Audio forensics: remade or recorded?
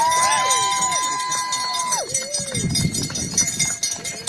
recorded